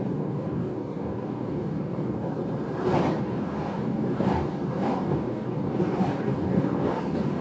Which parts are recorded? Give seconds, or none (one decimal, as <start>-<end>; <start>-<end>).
2.4-3.2